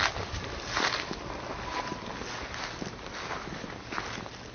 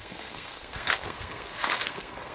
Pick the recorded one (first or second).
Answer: first